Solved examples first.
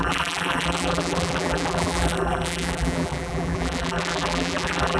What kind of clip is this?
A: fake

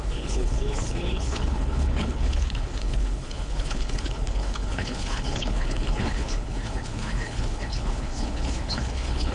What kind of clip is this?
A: fake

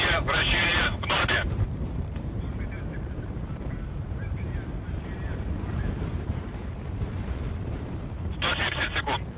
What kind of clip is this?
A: fake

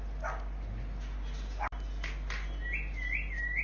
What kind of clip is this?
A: real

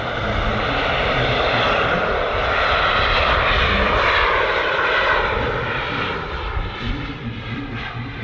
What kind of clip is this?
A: fake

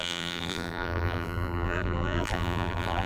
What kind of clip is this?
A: fake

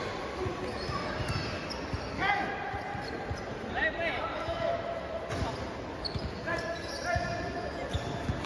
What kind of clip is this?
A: real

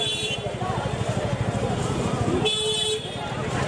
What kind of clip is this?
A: fake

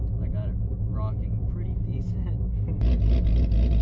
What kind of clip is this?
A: real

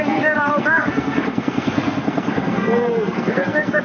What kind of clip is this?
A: fake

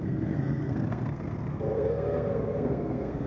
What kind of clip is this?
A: fake